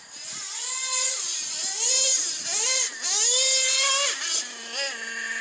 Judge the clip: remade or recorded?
recorded